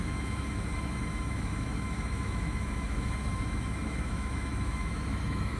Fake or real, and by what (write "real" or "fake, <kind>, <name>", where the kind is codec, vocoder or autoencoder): fake, autoencoder, DAC-VAE